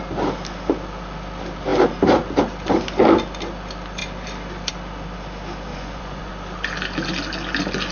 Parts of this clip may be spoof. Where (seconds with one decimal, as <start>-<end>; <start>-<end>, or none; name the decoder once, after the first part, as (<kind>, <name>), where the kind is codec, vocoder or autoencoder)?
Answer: 5.7-6.3 (vocoder, Vocos)